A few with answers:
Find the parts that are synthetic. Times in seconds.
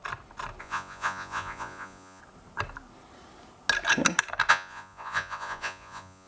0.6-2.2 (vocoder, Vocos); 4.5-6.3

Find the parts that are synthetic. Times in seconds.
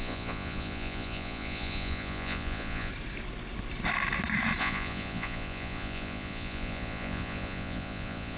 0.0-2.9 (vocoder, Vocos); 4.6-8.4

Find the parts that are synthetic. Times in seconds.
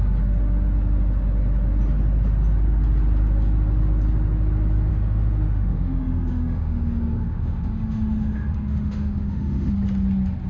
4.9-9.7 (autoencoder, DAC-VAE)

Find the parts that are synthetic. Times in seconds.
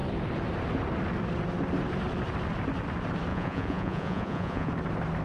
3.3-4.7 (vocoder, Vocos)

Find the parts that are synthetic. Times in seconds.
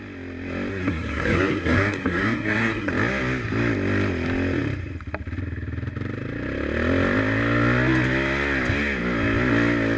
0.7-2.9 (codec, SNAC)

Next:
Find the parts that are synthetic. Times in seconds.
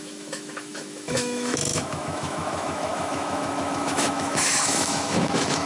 0.0-5.7 (autoencoder, DAC-VAE)